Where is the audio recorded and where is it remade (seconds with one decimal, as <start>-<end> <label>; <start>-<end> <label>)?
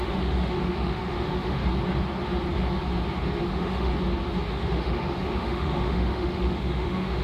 0.0-1.6 remade; 1.6-3.5 recorded; 3.5-3.9 remade; 3.9-4.5 recorded; 4.5-7.2 remade